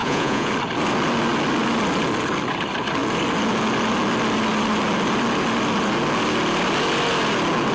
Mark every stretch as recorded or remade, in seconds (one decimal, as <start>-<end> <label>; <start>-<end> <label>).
0.0-0.5 remade; 0.5-7.7 recorded